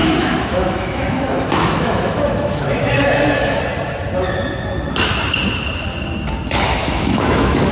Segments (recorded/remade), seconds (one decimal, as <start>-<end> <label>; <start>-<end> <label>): 0.0-3.6 remade; 3.6-6.8 recorded; 6.8-7.7 remade